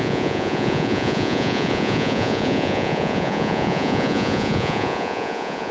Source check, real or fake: fake